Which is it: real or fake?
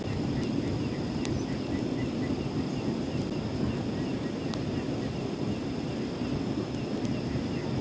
real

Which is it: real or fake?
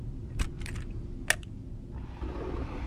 real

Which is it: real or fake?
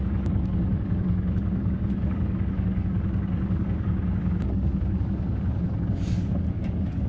fake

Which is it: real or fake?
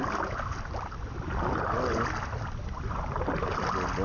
real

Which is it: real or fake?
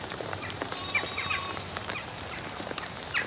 fake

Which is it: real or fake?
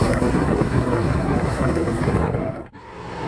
fake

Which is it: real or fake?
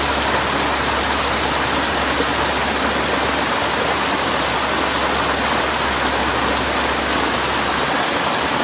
real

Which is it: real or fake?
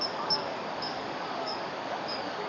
fake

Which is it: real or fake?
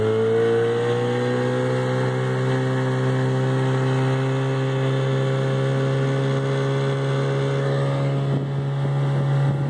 real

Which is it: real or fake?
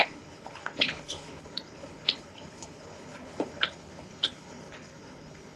fake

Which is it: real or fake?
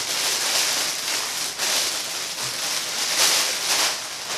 real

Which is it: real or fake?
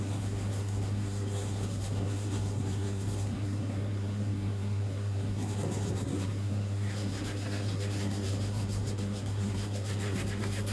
fake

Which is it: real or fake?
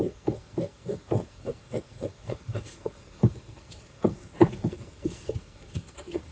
fake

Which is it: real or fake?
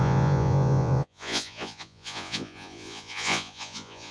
fake